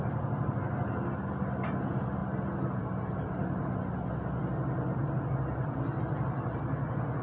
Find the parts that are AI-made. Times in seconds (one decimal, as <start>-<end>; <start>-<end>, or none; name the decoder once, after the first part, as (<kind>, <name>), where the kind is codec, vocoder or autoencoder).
none